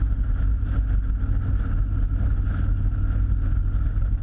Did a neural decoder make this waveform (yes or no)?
no